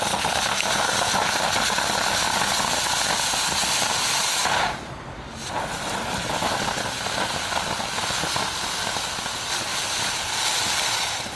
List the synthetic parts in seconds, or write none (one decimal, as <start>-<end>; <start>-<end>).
9.7-10.4